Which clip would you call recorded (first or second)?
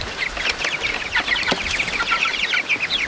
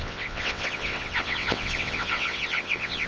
first